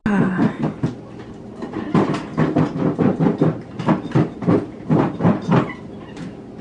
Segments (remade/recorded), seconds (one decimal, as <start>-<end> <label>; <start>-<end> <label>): 0.0-2.3 recorded; 2.3-6.1 remade; 6.1-6.6 recorded